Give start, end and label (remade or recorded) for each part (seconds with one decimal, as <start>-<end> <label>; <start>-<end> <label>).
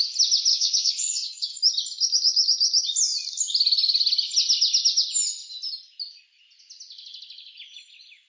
0.0-0.5 recorded; 0.5-1.5 remade; 1.5-8.3 recorded